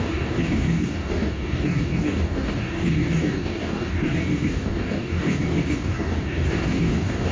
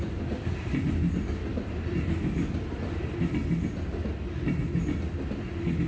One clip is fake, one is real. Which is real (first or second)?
second